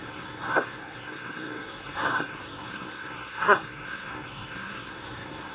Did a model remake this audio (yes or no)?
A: yes